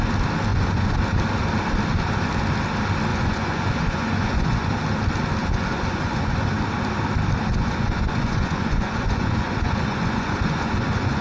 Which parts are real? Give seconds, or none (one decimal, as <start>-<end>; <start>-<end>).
0.0-0.5; 1.0-3.1; 4.7-5.4; 6.4-7.5

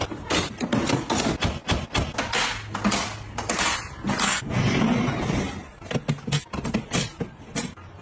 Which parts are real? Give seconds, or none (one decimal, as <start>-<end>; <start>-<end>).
0.0-8.0

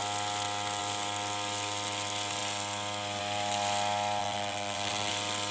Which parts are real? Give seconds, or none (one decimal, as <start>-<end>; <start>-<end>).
0.0-4.2; 5.1-5.5

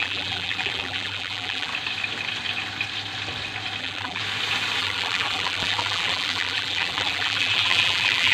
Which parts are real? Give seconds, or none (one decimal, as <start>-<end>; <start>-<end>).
1.7-3.8; 4.2-4.8